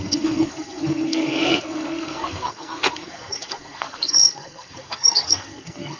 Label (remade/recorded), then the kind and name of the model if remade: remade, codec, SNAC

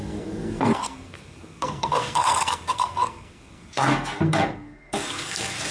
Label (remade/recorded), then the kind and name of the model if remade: remade, codec, SNAC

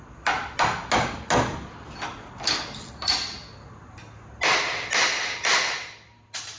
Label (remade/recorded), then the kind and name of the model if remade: recorded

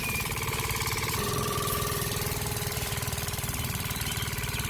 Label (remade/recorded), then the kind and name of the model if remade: remade, vocoder, BigVGAN v2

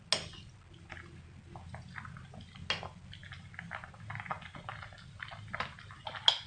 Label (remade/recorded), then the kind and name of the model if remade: recorded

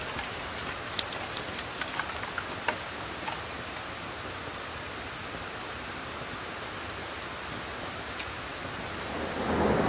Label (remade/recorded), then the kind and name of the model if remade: recorded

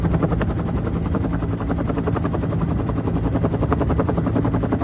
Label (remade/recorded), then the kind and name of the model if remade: recorded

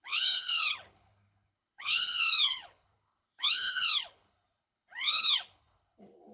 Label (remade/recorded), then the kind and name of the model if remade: remade, codec, HILCodec